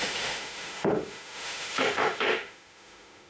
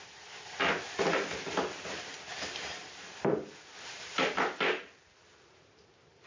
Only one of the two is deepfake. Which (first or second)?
first